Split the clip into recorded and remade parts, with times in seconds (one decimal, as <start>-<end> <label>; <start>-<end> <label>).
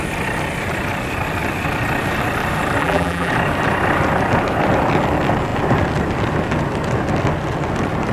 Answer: 0.0-2.8 recorded; 2.8-3.3 remade; 3.3-8.1 recorded